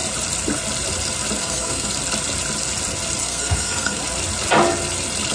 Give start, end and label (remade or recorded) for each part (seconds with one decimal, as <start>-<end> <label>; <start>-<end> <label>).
0.0-1.4 recorded; 1.4-1.9 remade; 1.9-3.2 recorded; 3.2-4.0 remade; 4.0-5.3 recorded

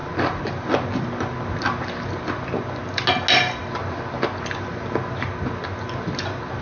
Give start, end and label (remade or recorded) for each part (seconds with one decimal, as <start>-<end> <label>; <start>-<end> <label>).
0.0-6.6 recorded

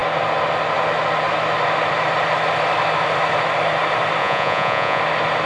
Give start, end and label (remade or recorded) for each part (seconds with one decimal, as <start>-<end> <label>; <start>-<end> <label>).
0.0-4.2 recorded; 4.2-5.0 remade; 5.0-5.5 recorded

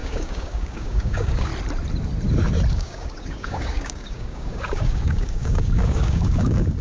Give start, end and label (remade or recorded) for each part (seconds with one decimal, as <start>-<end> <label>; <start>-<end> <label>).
0.0-1.5 remade; 1.5-2.7 recorded; 2.7-6.8 remade